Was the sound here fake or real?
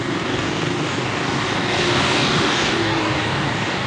fake